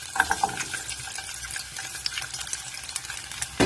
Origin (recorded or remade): recorded